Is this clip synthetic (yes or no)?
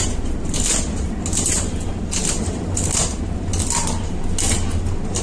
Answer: no